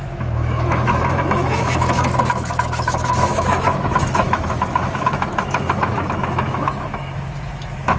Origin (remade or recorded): remade